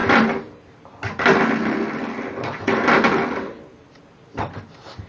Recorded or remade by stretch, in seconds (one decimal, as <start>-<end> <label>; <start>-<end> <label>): 0.0-0.8 remade; 0.8-5.1 recorded